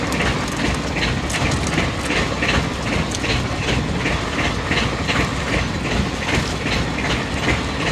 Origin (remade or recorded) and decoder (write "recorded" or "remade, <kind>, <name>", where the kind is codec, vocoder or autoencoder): recorded